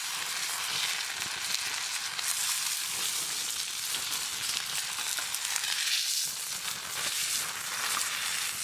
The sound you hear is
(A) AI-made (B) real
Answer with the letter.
B